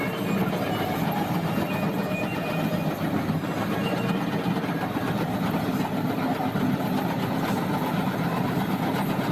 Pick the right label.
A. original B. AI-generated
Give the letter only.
A